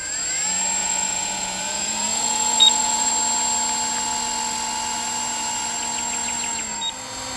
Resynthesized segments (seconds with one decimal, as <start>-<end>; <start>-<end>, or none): 0.8-3.1